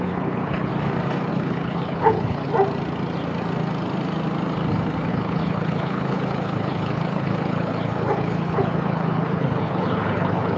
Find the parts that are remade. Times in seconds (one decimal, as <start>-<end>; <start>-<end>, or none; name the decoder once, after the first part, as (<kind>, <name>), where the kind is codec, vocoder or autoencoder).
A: 0.0-0.7 (codec, HILCodec); 1.3-2.5; 5.1-10.6